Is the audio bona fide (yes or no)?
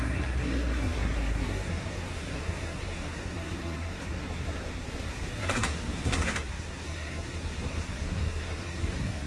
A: no